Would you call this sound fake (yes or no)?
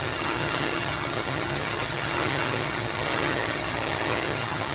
yes